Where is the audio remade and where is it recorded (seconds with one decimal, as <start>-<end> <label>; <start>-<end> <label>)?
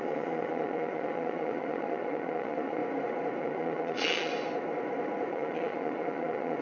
0.0-2.8 remade; 2.8-3.4 recorded; 3.4-4.3 remade; 4.3-5.3 recorded; 5.3-6.6 remade